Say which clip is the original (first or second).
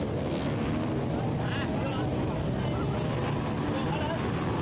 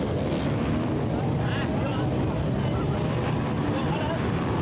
first